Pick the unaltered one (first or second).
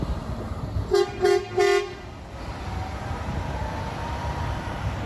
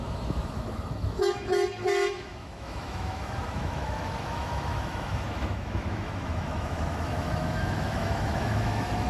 first